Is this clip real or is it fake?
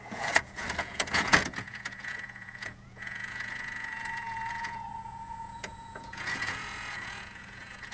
fake